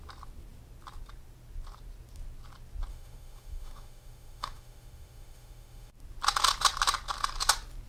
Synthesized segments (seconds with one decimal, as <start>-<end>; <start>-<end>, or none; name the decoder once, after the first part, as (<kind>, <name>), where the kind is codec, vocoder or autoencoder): 2.9-5.9 (autoencoder, DAC-VAE)